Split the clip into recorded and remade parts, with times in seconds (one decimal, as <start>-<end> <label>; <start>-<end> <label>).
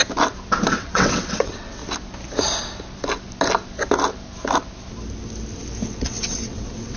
0.0-0.7 recorded; 0.7-1.8 remade; 1.8-6.0 recorded; 6.0-7.0 remade